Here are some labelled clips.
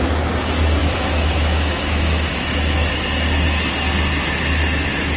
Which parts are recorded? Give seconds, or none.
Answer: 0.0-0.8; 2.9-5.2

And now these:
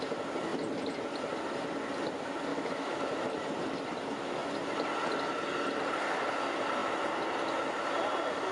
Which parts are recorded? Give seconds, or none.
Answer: 0.0-2.5; 3.0-8.5